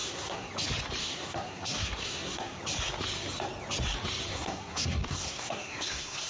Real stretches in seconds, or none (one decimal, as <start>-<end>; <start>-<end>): 0.5-1.0; 2.6-4.3